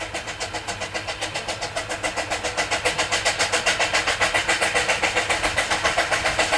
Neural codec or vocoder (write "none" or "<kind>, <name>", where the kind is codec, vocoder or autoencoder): none